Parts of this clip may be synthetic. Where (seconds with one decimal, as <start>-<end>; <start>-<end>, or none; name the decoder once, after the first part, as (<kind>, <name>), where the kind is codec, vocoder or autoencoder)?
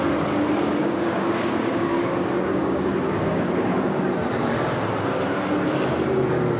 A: 0.7-4.0 (codec, DAC)